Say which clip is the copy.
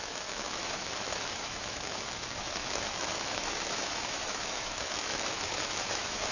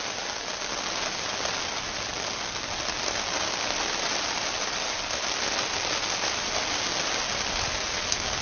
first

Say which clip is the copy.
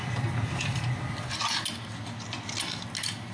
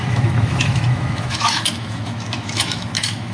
second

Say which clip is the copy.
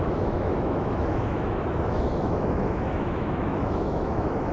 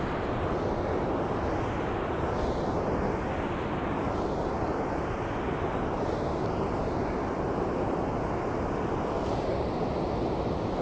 first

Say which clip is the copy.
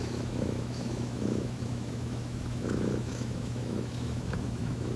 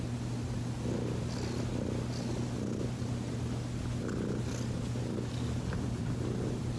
first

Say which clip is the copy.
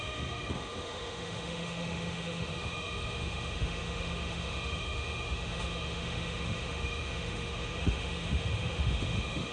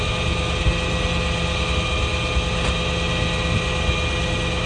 first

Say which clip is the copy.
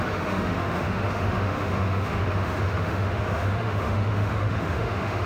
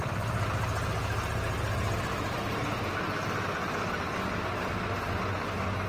first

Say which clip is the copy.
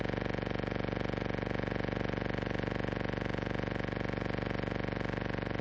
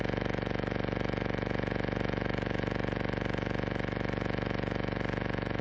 second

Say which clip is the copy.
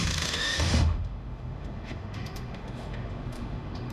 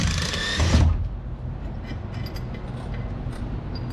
first